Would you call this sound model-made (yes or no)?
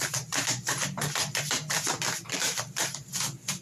no